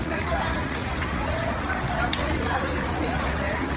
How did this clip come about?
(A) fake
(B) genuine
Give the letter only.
A